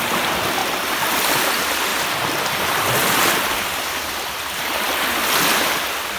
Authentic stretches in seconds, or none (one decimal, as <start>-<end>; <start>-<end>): 0.0-0.6; 1.3-3.0; 5.1-6.2